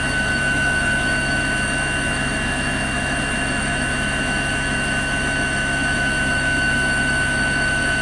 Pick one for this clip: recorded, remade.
remade